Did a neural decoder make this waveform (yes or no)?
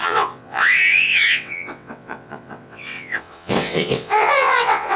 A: yes